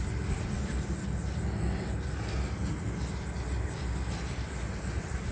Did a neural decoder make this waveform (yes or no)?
no